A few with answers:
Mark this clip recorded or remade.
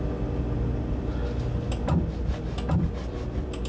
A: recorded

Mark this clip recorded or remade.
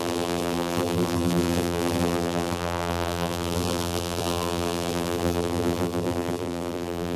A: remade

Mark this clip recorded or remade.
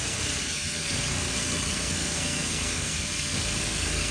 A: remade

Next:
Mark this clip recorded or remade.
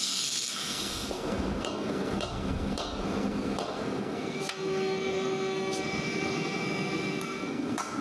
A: remade